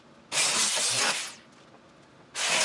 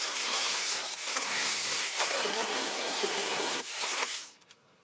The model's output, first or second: second